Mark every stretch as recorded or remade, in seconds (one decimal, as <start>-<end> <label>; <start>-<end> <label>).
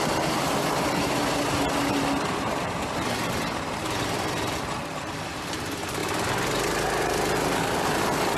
0.0-8.4 recorded